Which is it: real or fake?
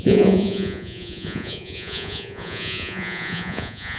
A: fake